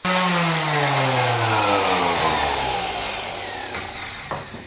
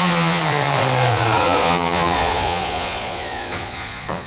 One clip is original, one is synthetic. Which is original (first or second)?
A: first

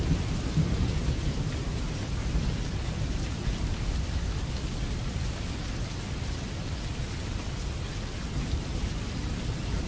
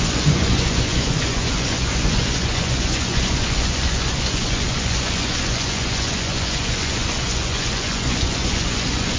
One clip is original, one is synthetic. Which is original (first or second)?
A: first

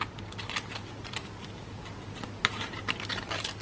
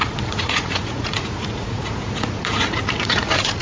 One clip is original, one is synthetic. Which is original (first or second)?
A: first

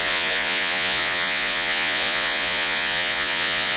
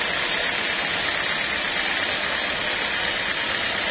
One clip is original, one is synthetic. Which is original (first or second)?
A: second